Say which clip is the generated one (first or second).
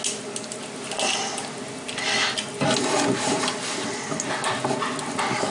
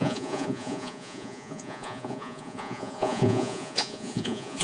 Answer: second